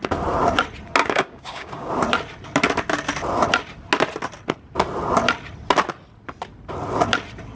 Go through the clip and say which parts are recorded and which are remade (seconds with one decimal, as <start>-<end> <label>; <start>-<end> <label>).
0.0-1.0 recorded; 1.0-1.9 remade; 1.9-7.6 recorded